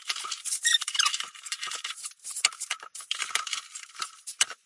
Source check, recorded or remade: remade